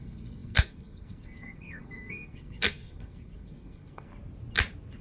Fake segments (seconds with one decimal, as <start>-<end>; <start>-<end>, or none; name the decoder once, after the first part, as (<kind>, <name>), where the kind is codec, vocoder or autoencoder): 0.0-4.1 (codec, SNAC)